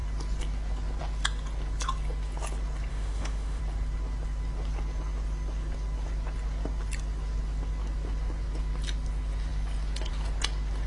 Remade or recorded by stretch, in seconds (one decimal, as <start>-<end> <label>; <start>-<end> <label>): 0.0-2.9 recorded; 2.9-3.6 remade; 3.6-10.9 recorded